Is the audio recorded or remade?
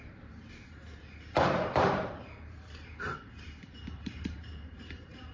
remade